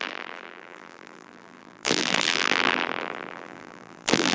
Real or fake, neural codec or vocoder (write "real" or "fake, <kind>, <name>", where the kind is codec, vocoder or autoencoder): fake, vocoder, BigVGAN v2